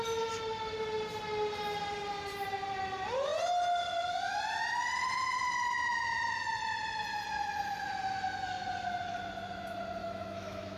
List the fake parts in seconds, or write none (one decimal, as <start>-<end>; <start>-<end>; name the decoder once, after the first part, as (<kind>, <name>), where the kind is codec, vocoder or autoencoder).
10.0-10.8 (autoencoder, DAC-VAE)